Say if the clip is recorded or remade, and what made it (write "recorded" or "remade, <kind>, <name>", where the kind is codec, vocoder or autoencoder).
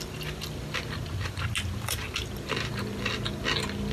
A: recorded